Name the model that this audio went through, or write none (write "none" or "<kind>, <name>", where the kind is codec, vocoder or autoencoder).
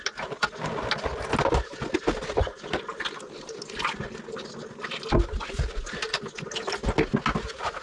none